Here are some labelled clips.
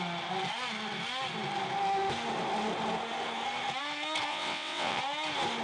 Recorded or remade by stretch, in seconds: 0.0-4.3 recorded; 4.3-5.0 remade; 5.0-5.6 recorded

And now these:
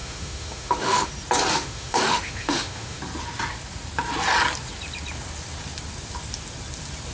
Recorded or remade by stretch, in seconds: 0.0-1.1 remade; 1.1-1.5 recorded; 1.5-3.0 remade; 3.0-7.1 recorded

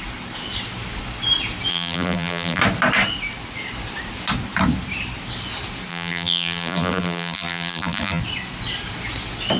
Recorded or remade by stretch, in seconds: 0.0-1.7 recorded; 1.7-2.6 remade; 2.6-5.9 recorded; 5.9-8.2 remade; 8.2-9.6 recorded